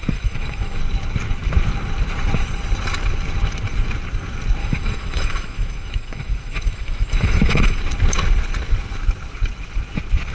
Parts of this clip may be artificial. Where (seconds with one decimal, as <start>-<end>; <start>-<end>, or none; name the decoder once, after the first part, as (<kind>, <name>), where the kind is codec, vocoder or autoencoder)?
0.0-0.8 (autoencoder, DAC-VAE); 4.6-7.8